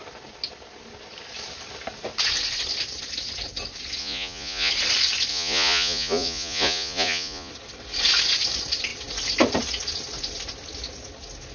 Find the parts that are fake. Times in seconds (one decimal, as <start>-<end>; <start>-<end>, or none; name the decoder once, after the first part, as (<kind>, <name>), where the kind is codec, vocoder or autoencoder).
4.0-4.7 (vocoder, Vocos); 5.3-7.5

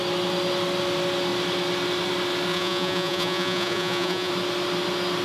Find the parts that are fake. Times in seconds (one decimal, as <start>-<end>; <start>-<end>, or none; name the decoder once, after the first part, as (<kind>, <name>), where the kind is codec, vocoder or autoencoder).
2.5-4.3 (vocoder, Vocos)

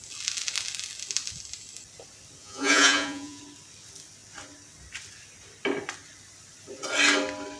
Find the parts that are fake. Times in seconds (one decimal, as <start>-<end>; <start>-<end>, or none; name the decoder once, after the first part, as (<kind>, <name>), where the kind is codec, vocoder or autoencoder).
2.4-3.4 (vocoder, Vocos)

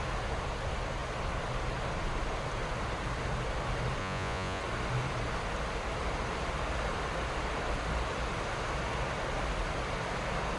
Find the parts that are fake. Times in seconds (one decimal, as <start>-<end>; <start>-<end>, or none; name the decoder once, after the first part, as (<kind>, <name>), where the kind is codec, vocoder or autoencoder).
4.0-4.6 (vocoder, Vocos)

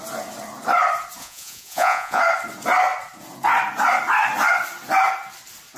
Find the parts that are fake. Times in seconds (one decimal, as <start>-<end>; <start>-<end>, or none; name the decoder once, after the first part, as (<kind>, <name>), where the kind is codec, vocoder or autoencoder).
1.2-2.2 (vocoder, Vocos)

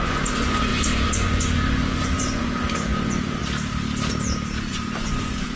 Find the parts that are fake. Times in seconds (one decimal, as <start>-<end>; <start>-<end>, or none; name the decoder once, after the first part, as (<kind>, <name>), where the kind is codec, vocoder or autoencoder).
0.0-3.4 (vocoder, Vocos); 4.7-5.6

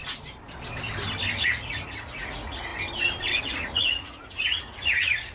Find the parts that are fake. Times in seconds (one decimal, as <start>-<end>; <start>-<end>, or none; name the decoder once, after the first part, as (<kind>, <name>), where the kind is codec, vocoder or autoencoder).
1.4-2.7 (vocoder, Vocos); 3.4-5.3